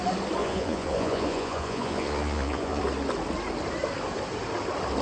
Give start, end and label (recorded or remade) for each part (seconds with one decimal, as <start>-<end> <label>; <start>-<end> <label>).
0.0-0.4 recorded; 0.4-2.8 remade; 2.8-5.0 recorded